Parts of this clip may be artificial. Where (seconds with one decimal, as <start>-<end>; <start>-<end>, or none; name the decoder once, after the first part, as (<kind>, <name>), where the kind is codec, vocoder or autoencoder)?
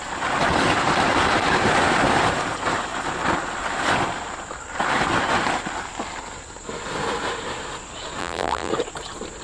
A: 8.2-8.7 (vocoder, BigVGAN v2)